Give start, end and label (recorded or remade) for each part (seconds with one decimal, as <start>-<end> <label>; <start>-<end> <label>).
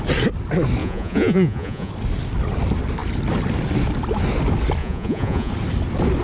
0.0-0.8 recorded; 0.8-1.9 remade; 1.9-4.8 recorded; 4.8-5.5 remade; 5.5-6.2 recorded